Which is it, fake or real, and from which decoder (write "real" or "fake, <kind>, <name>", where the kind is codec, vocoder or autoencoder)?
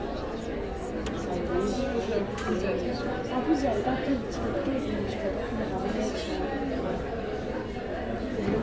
real